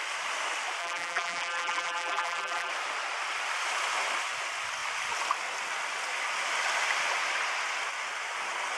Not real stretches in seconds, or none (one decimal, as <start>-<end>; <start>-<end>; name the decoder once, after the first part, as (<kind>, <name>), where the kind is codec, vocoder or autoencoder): 0.8-2.7 (vocoder, BigVGAN v2)